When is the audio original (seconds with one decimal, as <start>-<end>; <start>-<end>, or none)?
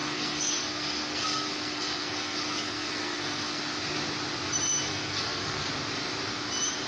3.6-4.9; 5.7-6.9